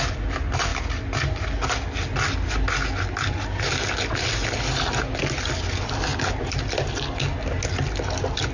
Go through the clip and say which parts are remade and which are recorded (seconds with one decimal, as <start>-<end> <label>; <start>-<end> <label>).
0.0-8.5 recorded